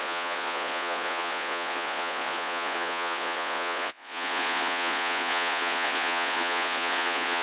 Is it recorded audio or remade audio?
remade